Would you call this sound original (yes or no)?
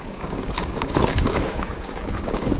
no